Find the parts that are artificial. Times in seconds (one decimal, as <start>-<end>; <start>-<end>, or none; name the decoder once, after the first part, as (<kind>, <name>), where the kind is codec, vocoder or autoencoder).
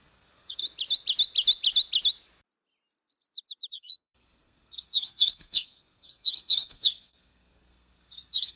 0.0-0.6 (codec, SNAC); 3.7-8.6